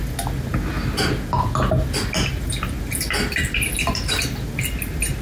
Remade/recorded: recorded